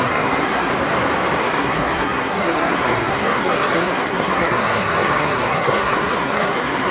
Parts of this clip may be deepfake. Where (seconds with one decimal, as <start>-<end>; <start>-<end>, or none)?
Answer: 0.0-0.7; 1.4-6.9

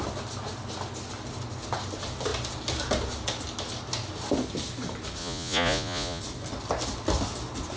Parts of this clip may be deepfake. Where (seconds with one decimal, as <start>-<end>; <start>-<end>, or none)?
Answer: 5.2-6.2

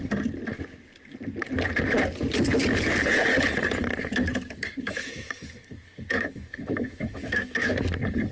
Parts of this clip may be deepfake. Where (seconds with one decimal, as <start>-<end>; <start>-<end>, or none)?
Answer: 4.0-7.7

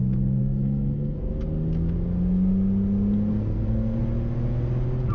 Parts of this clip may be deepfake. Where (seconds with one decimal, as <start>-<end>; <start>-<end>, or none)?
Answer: 0.4-1.3; 3.3-4.0

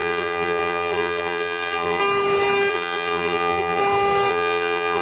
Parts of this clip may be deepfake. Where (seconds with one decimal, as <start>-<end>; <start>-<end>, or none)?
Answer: 0.0-2.0; 2.7-3.8; 4.3-5.0

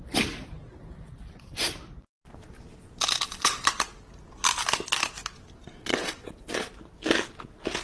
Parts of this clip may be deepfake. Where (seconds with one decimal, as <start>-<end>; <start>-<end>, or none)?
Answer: 5.8-6.7